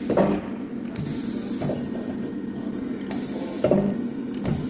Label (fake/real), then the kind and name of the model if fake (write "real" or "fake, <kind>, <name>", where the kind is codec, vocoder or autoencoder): real